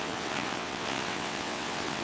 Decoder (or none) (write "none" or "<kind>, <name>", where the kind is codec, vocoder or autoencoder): vocoder, WaveNeXt